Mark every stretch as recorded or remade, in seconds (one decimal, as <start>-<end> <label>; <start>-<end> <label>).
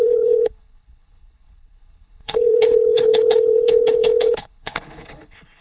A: 0.0-5.6 remade